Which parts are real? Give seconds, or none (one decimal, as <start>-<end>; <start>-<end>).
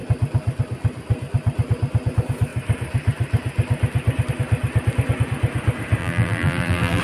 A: 0.0-6.0